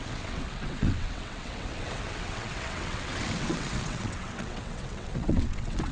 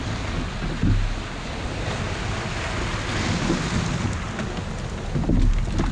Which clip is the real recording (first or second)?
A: second